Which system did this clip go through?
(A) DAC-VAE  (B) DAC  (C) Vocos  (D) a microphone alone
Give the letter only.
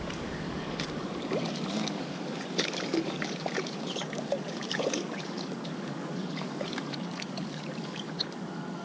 B